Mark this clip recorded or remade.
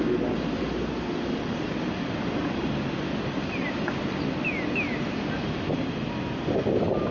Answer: recorded